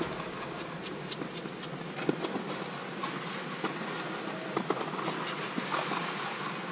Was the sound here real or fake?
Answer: real